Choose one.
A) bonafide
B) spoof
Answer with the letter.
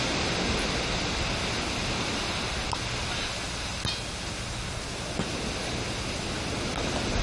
A